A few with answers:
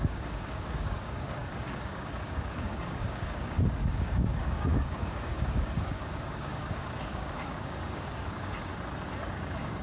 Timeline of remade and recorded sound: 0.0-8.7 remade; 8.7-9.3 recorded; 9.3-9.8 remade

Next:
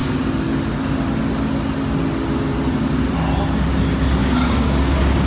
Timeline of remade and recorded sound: 0.0-4.2 recorded; 4.2-5.3 remade

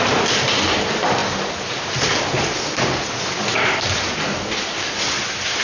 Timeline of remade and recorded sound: 0.0-5.6 recorded